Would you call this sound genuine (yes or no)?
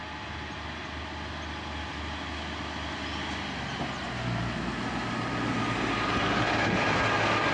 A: yes